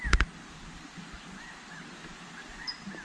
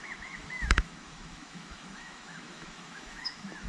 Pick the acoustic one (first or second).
first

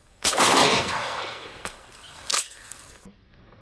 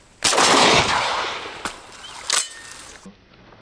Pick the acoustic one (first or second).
second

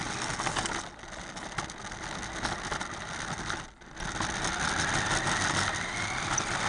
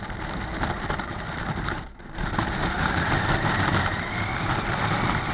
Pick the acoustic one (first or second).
first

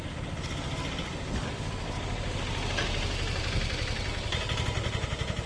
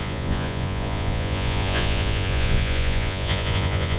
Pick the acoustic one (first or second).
first